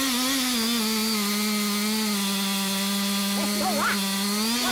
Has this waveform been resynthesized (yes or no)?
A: no